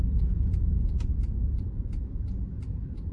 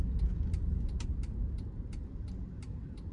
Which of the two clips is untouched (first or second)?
second